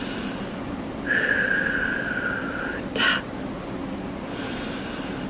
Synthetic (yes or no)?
no